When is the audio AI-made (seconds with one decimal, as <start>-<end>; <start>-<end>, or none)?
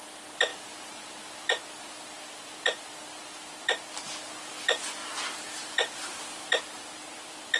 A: none